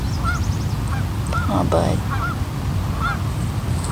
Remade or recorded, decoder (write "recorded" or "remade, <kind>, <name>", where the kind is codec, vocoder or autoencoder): recorded